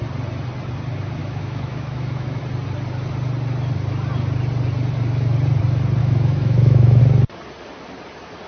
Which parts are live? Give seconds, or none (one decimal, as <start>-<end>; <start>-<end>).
0.0-1.2; 2.4-6.0; 7.0-8.5